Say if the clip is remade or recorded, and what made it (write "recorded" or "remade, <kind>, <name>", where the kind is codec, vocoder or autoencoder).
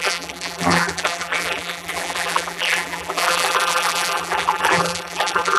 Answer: remade, vocoder, BigVGAN v2